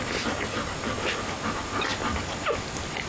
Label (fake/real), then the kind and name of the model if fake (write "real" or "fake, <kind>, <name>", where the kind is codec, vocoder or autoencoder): real